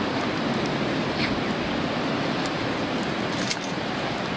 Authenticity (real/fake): real